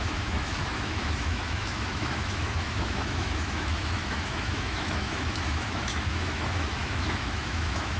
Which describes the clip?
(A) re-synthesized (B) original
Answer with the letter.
A